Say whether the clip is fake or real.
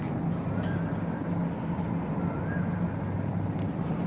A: real